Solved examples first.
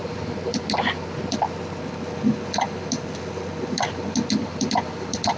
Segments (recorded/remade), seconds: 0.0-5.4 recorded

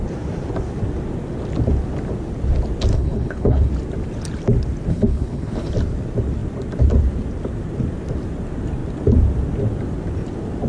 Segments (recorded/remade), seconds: 0.0-2.9 recorded; 2.9-3.7 remade; 3.7-4.9 recorded; 4.9-5.7 remade; 5.7-10.7 recorded

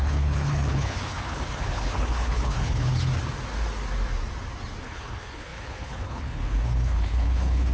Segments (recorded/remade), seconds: 0.0-3.1 remade; 3.1-4.8 recorded; 4.8-7.7 remade

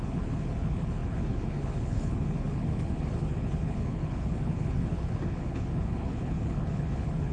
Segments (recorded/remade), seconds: 0.0-7.3 remade

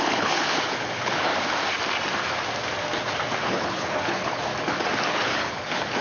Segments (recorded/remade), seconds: 0.0-1.3 remade; 1.3-3.4 recorded; 3.4-4.5 remade; 4.5-5.1 recorded; 5.1-6.0 remade